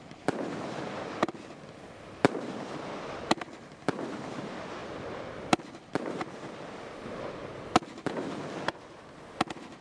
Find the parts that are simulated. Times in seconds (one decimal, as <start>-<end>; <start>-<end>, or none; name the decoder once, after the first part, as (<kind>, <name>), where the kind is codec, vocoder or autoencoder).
none